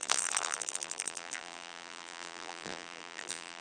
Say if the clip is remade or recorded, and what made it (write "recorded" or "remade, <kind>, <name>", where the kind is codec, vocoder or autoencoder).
remade, vocoder, BigVGAN v2